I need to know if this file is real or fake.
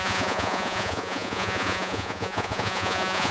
fake